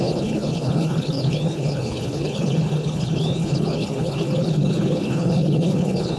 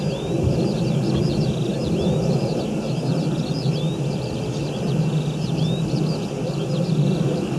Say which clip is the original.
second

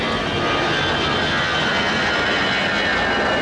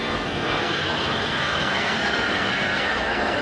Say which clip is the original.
first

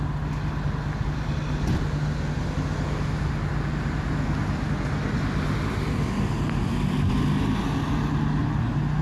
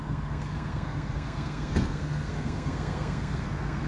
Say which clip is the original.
first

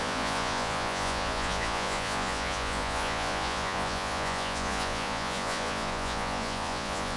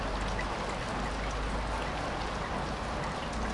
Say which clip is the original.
second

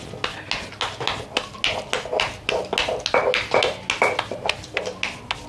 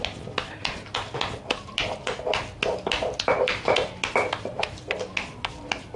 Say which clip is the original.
first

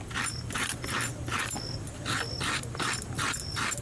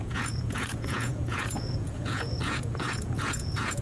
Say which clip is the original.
first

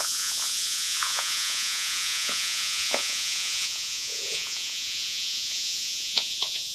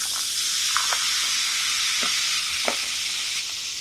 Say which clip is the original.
second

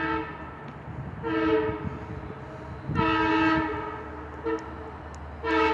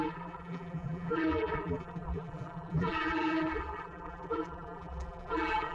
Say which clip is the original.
first